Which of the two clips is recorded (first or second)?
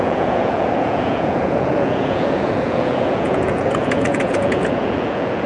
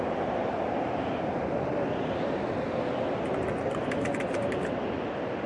second